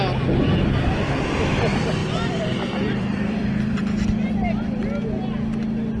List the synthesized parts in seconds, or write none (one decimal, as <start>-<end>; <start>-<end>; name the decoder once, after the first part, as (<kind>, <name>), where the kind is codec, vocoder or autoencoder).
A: 2.0-4.8 (vocoder, BigVGAN v2)